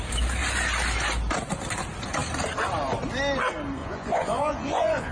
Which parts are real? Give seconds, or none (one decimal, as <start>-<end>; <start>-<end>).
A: 0.0-3.8